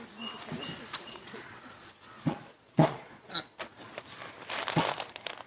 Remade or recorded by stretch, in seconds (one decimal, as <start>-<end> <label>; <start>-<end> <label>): 0.0-0.8 recorded; 0.8-3.9 remade; 3.9-5.5 recorded